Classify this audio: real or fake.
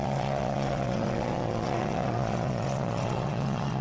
fake